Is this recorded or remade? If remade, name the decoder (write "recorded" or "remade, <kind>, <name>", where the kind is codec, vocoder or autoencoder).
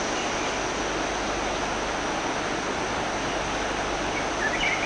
recorded